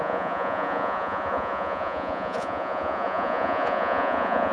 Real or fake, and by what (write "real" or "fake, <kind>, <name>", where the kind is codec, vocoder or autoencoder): fake, vocoder, Vocos